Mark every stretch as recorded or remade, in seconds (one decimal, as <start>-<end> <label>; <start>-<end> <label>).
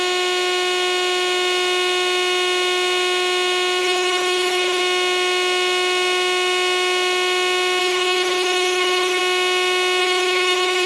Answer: 0.0-3.8 recorded; 3.8-4.8 remade; 4.8-7.8 recorded; 7.8-9.2 remade; 9.2-10.0 recorded; 10.0-10.9 remade